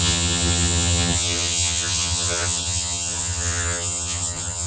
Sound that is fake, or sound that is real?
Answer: fake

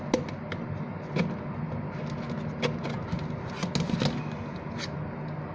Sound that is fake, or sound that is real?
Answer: real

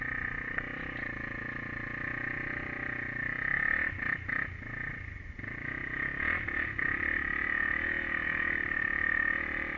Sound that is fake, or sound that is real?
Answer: real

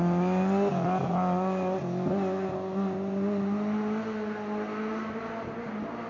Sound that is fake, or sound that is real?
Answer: real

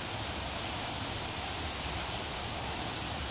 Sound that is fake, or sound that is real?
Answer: real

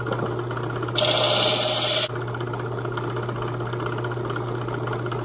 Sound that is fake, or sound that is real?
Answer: real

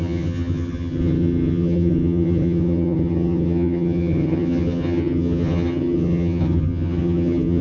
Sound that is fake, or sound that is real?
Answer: fake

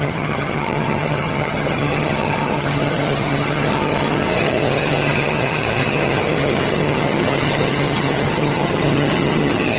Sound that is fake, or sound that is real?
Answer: fake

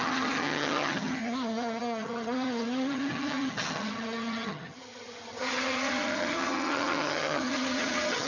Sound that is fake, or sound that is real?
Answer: fake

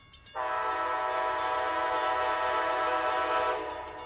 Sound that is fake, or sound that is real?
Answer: real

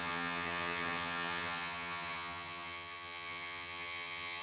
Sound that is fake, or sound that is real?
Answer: fake